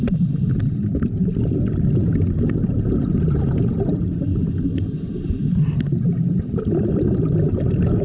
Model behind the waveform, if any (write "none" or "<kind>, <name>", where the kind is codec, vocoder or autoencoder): none